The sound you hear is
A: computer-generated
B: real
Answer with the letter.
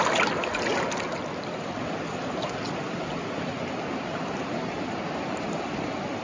B